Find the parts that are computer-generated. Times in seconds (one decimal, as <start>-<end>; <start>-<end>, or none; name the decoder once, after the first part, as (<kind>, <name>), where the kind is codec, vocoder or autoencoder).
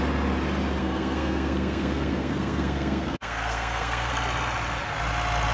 0.8-4.1 (codec, SNAC)